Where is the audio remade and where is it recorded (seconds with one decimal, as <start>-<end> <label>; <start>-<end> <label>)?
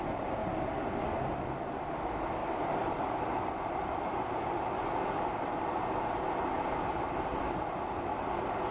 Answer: 0.0-8.7 recorded